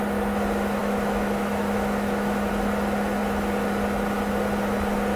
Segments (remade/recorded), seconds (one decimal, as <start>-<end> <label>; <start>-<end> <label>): 0.0-0.8 recorded; 0.8-2.5 remade; 2.5-5.2 recorded